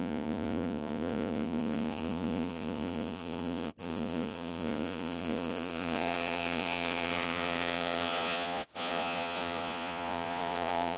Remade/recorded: remade